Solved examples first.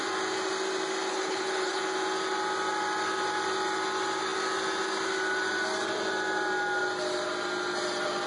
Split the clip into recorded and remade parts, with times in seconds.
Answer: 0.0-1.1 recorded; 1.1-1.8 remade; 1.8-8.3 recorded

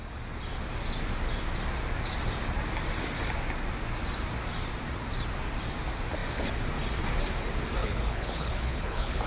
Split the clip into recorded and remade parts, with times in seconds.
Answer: 0.0-7.8 recorded; 7.8-9.3 remade